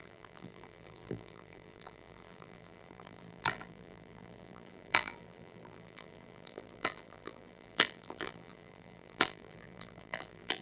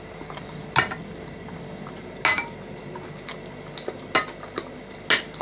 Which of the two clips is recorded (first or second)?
second